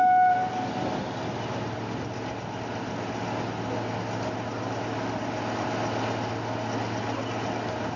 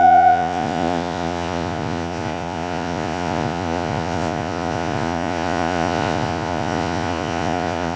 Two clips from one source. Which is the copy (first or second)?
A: second